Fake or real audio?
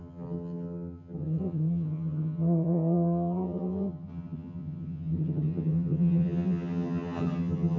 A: fake